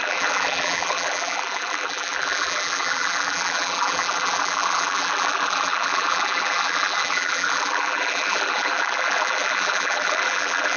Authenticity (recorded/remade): remade